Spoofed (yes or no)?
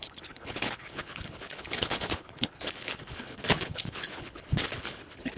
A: yes